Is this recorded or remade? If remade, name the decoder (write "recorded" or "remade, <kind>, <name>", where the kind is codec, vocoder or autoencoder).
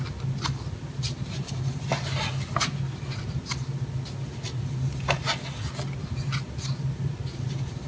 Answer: recorded